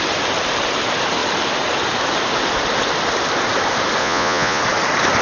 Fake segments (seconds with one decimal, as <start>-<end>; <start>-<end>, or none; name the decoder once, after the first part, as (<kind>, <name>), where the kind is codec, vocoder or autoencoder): 4.0-4.6 (vocoder, Vocos)